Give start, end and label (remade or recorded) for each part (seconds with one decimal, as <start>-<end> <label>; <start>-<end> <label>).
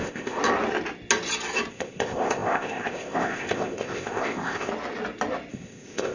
0.0-0.4 remade; 0.4-1.7 recorded; 1.7-4.7 remade; 4.7-5.5 recorded; 5.5-6.1 remade